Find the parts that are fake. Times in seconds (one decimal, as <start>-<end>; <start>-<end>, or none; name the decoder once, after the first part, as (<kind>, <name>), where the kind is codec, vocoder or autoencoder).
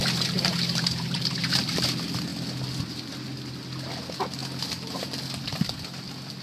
0.0-1.7 (vocoder, BigVGAN v2)